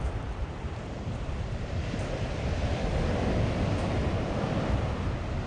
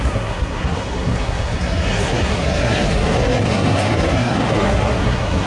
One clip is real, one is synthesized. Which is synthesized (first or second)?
second